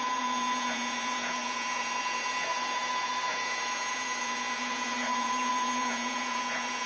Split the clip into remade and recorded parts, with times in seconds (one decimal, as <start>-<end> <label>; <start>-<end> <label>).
0.0-6.9 remade

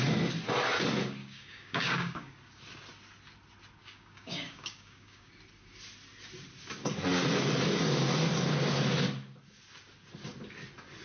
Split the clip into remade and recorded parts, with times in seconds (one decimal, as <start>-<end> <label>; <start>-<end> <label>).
0.0-1.2 recorded; 1.2-2.3 remade; 2.3-3.8 recorded; 3.8-5.3 remade; 5.3-11.0 recorded

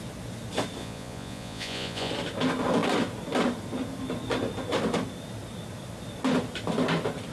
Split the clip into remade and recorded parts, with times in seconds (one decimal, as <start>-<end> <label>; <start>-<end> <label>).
0.0-0.8 recorded; 0.8-2.1 remade; 2.1-7.3 recorded

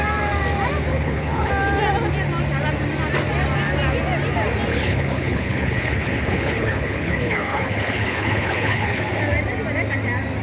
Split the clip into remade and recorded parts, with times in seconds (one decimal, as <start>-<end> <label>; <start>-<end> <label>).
0.0-0.9 recorded; 0.9-1.5 remade; 1.5-4.7 recorded; 4.7-9.0 remade; 9.0-10.4 recorded